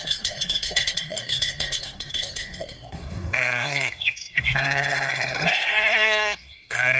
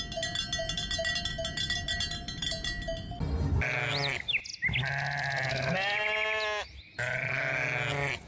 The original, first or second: second